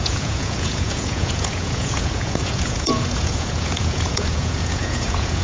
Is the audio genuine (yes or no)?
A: no